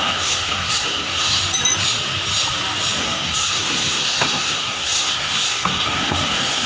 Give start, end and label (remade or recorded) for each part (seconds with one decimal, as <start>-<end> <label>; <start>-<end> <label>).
0.0-1.4 remade; 1.4-3.0 recorded; 3.0-6.7 remade